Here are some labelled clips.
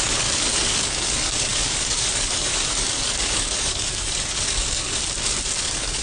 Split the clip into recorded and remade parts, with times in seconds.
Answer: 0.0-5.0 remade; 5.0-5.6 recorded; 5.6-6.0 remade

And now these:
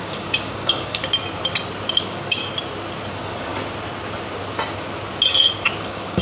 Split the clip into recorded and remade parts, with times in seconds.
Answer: 0.0-1.0 remade; 1.0-2.0 recorded; 2.0-2.4 remade; 2.4-3.1 recorded; 3.1-3.5 remade; 3.5-5.8 recorded; 5.8-6.2 remade